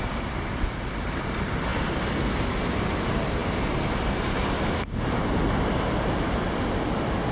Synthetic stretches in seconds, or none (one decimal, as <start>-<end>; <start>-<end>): 1.7-2.7